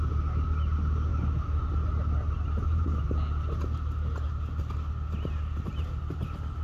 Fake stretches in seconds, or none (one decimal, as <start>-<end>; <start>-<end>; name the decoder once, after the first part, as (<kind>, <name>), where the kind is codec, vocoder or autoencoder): 1.1-1.6 (autoencoder, DAC-VAE)